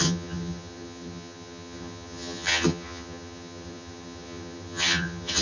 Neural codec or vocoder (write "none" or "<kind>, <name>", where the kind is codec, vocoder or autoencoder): vocoder, HiFi-GAN